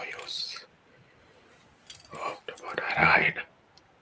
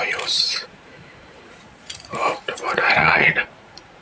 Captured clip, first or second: first